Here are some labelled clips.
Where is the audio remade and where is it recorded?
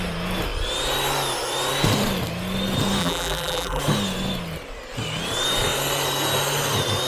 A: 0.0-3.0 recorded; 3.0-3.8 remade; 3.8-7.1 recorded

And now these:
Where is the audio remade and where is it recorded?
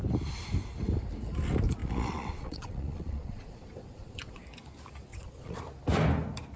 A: 0.0-1.8 recorded; 1.8-4.4 remade; 4.4-5.1 recorded; 5.1-5.6 remade; 5.6-6.6 recorded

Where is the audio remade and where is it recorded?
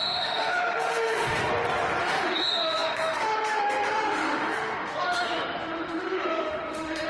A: 0.0-1.4 remade; 1.4-2.0 recorded; 2.0-7.1 remade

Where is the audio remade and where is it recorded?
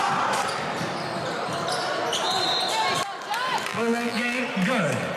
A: 0.0-3.7 recorded; 3.7-4.4 remade; 4.4-5.2 recorded